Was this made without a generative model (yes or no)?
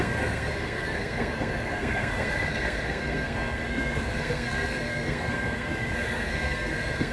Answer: no